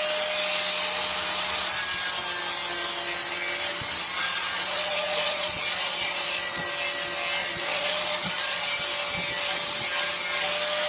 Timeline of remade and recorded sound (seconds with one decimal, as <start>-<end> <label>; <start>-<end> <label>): 0.0-4.2 recorded; 4.2-6.6 remade; 6.6-7.4 recorded; 7.4-8.7 remade; 8.7-10.9 recorded